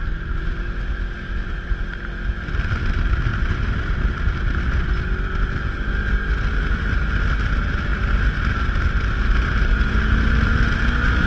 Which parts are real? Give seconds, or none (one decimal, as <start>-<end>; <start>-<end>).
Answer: 0.0-11.3